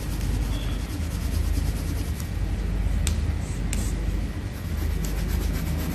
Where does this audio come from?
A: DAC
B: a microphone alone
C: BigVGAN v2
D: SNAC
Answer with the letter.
B